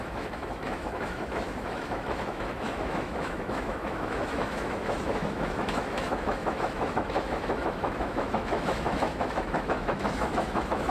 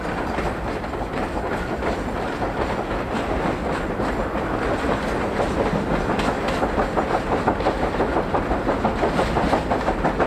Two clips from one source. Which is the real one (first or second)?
second